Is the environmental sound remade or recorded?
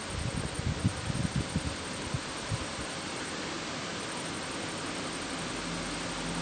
recorded